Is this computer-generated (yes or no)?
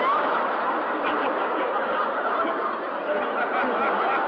no